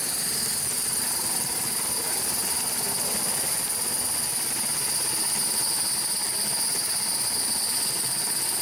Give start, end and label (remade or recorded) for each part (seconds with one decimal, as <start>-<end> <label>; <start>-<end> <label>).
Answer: 0.0-8.6 recorded